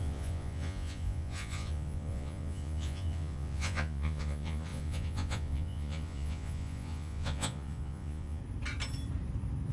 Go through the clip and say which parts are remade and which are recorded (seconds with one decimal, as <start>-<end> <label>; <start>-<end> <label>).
0.0-8.4 remade; 8.4-9.7 recorded